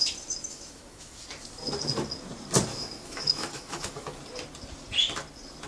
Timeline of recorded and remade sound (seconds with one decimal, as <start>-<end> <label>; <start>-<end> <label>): 0.0-0.4 recorded; 0.4-1.2 remade; 1.2-2.7 recorded; 2.7-4.2 remade; 4.2-5.7 recorded